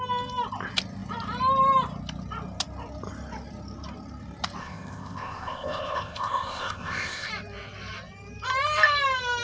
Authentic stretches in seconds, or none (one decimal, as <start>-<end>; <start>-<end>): 0.0-4.6; 7.3-9.4